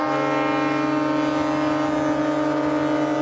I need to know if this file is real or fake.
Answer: real